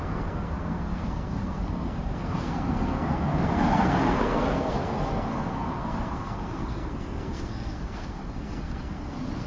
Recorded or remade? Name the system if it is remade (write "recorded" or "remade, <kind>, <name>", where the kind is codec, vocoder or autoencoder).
remade, codec, SNAC